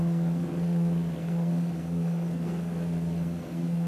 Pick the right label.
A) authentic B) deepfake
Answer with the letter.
B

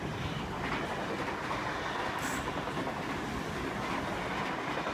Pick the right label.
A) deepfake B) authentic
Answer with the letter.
B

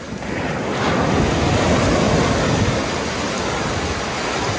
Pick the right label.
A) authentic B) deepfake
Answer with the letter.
A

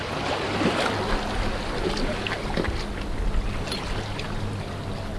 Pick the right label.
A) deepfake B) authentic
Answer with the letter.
B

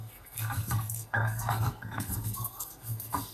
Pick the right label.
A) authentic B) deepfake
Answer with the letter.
B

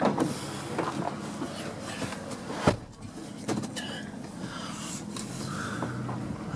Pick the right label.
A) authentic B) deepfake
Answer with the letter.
A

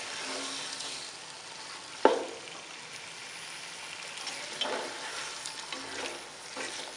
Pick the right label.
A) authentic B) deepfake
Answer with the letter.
A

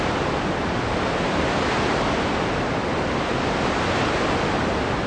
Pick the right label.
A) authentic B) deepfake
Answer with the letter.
A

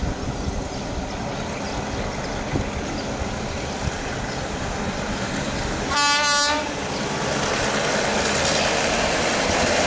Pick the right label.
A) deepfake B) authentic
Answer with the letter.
B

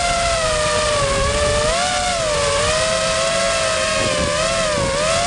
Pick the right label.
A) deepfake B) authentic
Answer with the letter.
B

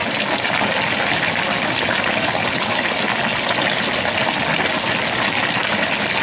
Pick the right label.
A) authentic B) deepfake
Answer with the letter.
A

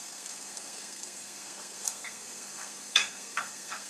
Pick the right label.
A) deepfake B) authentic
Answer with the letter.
A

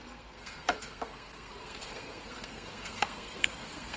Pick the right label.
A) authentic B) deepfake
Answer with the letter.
B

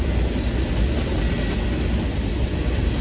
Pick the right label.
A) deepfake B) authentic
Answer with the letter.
B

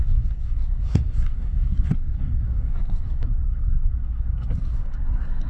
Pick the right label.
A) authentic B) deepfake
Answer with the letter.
B